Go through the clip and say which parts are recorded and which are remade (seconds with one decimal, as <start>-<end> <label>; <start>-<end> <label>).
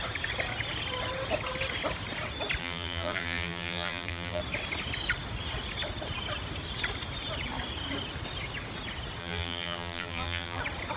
0.0-2.6 recorded; 2.6-4.4 remade; 4.4-9.2 recorded; 9.2-10.6 remade; 10.6-11.0 recorded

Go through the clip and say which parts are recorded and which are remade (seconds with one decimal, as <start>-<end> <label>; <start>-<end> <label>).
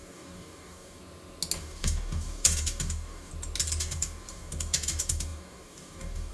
0.0-1.0 remade; 1.0-1.6 recorded; 1.6-3.3 remade; 3.3-3.8 recorded; 3.8-6.3 remade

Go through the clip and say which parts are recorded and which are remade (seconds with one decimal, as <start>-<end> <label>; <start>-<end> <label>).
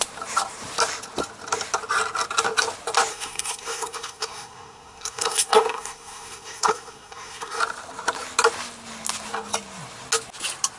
0.0-3.1 recorded; 3.1-7.6 remade; 7.6-10.8 recorded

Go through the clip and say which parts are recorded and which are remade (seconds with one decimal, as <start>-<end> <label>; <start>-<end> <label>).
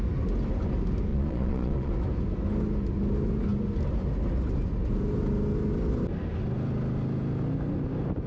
0.0-1.1 recorded; 1.1-1.9 remade; 1.9-8.3 recorded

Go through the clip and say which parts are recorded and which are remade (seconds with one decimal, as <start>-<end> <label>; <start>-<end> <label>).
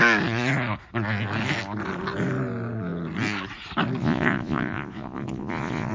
0.0-4.0 recorded; 4.0-5.9 remade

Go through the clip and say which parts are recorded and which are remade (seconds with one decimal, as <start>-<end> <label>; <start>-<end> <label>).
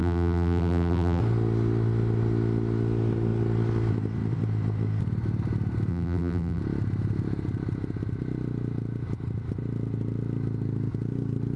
0.0-1.2 remade; 1.2-5.9 recorded; 5.9-6.6 remade; 6.6-11.6 recorded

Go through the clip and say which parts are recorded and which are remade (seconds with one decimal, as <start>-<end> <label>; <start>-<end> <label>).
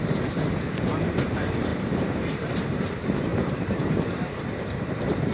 0.0-5.3 remade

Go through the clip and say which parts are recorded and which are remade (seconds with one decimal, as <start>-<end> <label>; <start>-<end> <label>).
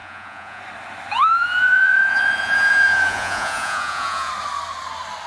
0.0-0.6 remade; 0.6-1.1 recorded; 1.1-4.3 remade; 4.3-5.3 recorded